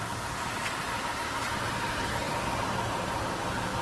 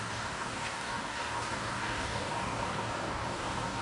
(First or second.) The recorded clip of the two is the first